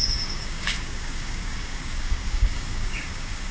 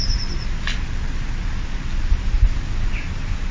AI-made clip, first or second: first